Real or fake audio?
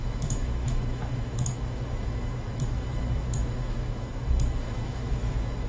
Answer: fake